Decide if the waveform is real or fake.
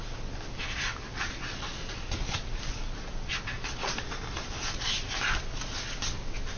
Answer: real